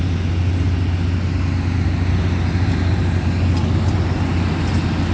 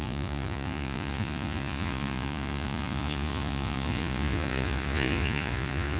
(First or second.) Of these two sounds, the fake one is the second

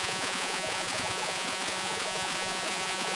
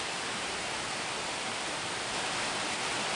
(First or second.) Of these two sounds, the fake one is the first